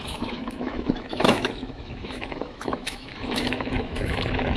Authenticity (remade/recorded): remade